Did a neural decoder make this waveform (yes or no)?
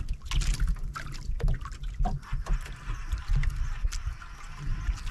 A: no